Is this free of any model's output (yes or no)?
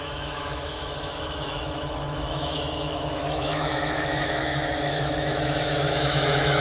no